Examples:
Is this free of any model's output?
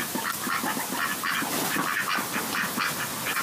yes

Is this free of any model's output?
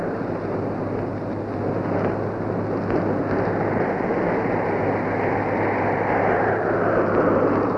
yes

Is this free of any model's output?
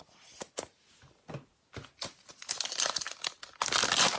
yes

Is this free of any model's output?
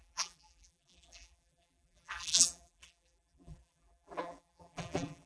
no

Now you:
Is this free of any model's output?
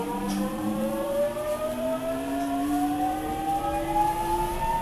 no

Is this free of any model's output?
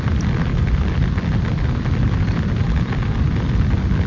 yes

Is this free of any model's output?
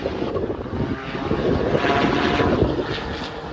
yes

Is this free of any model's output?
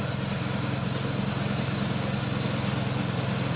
yes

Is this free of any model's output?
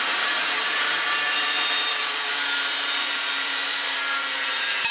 no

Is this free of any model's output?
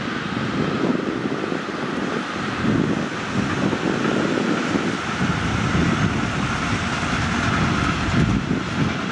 yes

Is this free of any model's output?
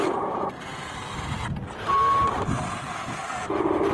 yes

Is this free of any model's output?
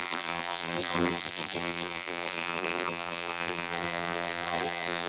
no